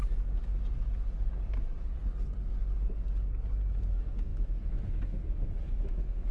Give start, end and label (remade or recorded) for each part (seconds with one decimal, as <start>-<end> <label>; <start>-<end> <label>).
0.0-3.8 recorded; 3.8-6.3 remade